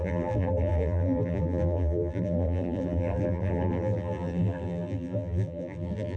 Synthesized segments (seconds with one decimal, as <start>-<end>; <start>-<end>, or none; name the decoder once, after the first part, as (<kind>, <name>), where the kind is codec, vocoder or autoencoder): 0.0-6.2 (vocoder, BigVGAN v2)